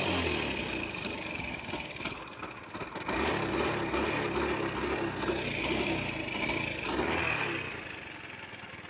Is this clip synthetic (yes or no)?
no